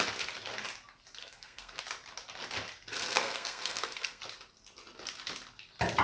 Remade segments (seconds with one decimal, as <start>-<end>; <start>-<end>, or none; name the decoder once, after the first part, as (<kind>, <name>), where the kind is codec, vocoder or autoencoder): 1.2-1.8 (codec, SNAC); 2.9-4.2